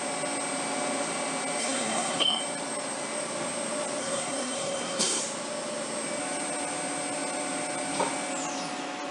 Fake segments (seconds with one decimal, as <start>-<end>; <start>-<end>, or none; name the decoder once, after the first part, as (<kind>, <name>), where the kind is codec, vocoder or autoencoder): 1.6-2.4 (codec, SNAC); 4.0-5.2